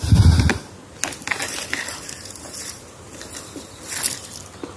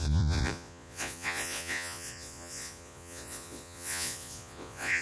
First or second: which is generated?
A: second